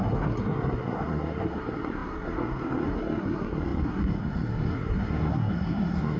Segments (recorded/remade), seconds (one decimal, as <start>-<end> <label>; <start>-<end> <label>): 0.0-6.2 remade

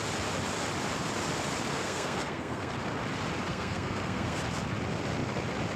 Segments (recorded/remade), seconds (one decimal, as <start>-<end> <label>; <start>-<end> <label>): 0.0-1.7 recorded; 1.7-2.7 remade; 2.7-3.5 recorded; 3.5-4.4 remade; 4.4-5.8 recorded

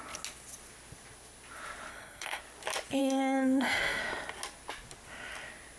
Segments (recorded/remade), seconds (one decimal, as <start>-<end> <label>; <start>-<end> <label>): 0.0-1.9 recorded; 1.9-2.4 remade; 2.4-3.0 recorded; 3.0-4.0 remade; 4.0-5.8 recorded

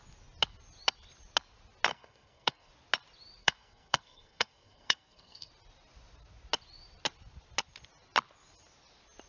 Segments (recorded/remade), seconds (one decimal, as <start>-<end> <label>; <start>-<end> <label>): 0.0-1.9 recorded; 1.9-2.7 remade; 2.7-3.4 recorded; 3.4-5.5 remade; 5.5-9.3 recorded

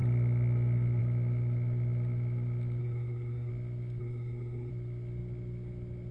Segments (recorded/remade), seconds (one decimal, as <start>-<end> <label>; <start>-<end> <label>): 0.0-2.8 recorded; 2.8-3.5 remade; 3.5-4.0 recorded; 4.0-4.7 remade; 4.7-6.1 recorded

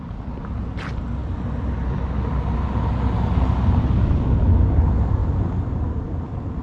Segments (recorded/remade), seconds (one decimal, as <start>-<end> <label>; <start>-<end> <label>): 0.0-6.6 recorded